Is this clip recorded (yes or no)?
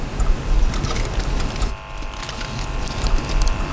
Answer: yes